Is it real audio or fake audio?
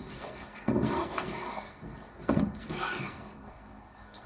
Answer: fake